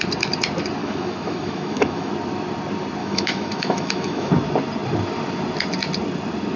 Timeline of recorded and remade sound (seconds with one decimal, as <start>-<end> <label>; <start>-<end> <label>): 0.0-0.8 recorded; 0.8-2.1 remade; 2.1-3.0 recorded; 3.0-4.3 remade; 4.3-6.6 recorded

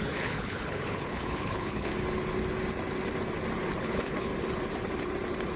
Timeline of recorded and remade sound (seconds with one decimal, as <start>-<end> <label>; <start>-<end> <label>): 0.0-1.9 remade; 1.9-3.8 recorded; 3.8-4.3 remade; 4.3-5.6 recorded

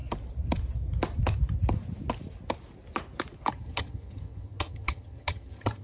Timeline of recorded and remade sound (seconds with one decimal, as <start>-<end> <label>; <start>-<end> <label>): 0.0-3.5 recorded; 3.5-5.8 remade